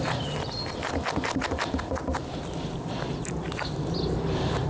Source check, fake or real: real